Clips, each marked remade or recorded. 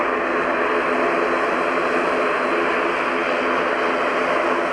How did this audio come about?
recorded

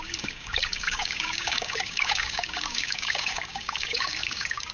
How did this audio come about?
remade